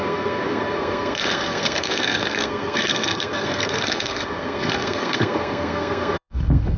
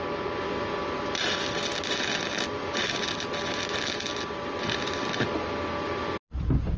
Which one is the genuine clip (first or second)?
second